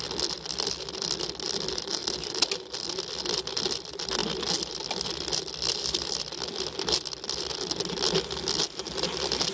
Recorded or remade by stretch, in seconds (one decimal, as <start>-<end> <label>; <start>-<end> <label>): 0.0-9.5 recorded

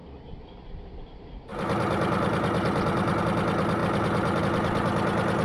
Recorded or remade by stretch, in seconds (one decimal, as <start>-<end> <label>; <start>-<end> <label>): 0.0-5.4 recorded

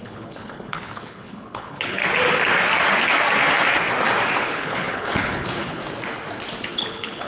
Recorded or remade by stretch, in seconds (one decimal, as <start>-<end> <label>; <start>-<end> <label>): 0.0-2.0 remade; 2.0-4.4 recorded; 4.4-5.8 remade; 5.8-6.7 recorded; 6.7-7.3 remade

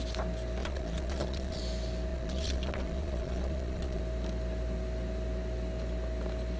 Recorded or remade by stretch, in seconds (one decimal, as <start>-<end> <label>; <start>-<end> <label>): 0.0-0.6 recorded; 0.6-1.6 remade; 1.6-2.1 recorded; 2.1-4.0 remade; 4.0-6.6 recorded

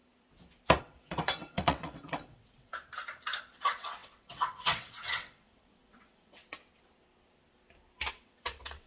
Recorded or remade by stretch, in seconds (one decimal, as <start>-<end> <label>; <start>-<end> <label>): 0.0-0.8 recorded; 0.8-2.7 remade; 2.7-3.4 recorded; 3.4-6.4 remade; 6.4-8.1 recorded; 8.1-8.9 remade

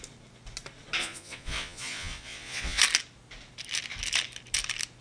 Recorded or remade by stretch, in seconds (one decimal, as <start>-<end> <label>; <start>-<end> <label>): 0.0-1.0 recorded; 1.0-2.8 remade; 2.8-5.0 recorded

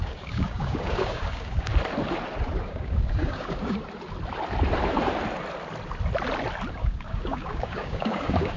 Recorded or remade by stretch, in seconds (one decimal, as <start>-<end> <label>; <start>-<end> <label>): 0.0-1.7 remade; 1.7-2.6 recorded; 2.6-3.8 remade; 3.8-6.7 recorded; 6.7-8.6 remade

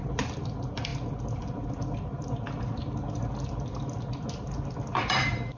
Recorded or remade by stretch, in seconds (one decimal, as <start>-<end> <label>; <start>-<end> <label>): 0.0-5.6 recorded